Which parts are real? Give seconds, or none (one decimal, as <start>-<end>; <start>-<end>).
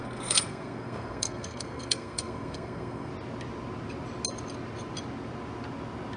3.1-6.2